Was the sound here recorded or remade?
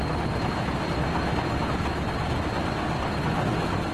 recorded